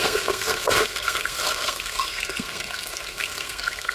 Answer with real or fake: fake